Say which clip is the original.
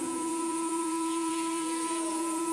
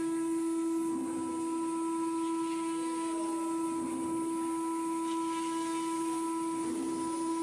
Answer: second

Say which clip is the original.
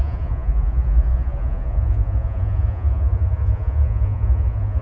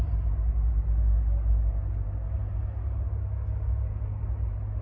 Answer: second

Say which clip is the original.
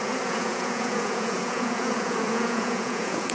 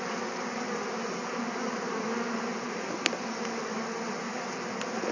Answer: second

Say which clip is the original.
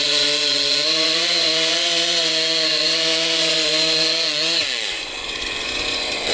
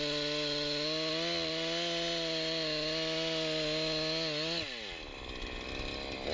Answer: second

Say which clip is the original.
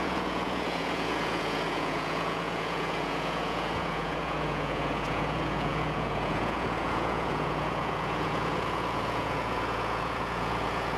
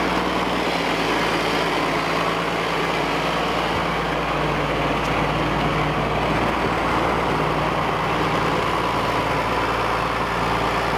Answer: second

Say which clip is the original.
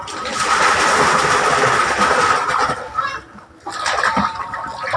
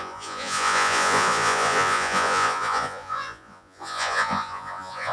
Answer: first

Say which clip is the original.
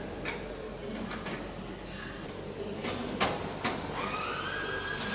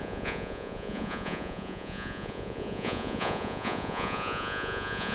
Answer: first